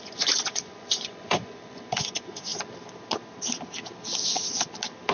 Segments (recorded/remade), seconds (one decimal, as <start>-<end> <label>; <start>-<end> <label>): 0.0-2.5 remade; 2.5-5.1 recorded